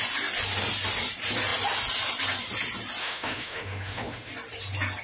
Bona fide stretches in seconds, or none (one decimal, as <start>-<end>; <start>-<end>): 0.0-3.0; 4.3-5.0